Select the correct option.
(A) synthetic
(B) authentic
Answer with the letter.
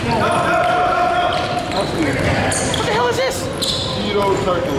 B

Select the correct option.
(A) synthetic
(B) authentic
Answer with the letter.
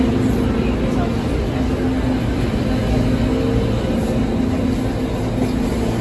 B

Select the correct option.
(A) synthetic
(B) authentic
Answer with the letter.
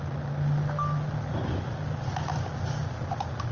B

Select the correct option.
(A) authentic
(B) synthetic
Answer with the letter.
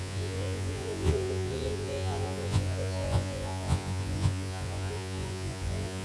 B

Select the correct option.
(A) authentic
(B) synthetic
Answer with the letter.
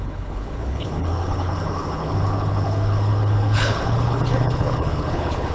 B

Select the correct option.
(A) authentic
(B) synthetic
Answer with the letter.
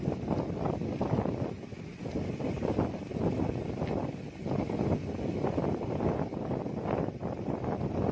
A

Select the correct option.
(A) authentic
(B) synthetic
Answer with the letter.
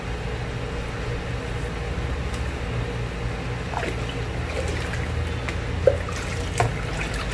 A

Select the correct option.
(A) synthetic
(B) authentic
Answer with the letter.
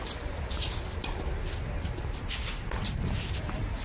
B